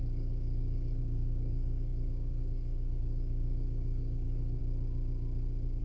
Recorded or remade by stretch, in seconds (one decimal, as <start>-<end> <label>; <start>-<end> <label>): 0.0-4.6 remade; 4.6-5.8 recorded